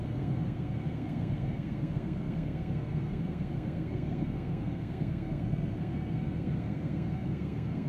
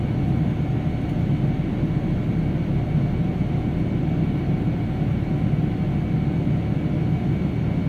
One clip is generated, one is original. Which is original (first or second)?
second